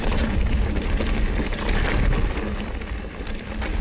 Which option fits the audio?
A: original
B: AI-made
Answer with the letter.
A